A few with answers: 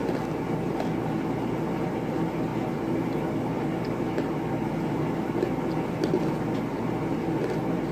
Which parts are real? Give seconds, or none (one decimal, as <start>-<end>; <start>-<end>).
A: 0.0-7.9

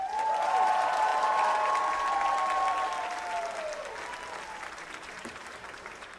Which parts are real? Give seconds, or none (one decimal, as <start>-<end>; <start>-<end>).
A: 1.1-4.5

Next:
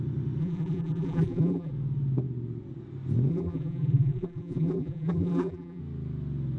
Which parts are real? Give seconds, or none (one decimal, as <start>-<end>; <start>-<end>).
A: 0.0-0.4; 1.7-3.3; 5.8-6.6

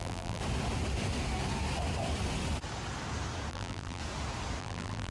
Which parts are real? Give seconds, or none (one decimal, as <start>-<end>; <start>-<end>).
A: 0.4-3.5; 4.0-4.6